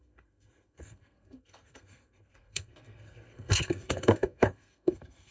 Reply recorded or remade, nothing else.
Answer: remade